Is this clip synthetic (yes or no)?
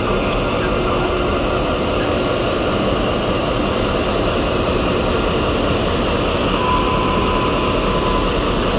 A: no